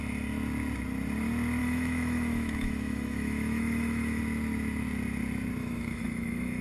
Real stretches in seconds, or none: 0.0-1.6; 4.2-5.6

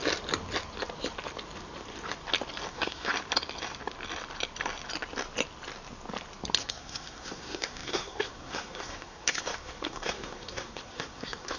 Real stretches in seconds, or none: 0.0-2.7; 3.1-6.6

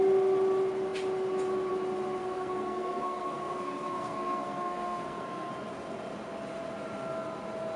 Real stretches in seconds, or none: 0.0-2.2; 5.5-7.8